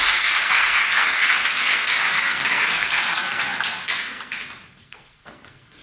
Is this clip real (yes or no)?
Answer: no